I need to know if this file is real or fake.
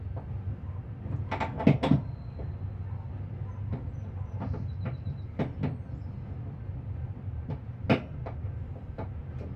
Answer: real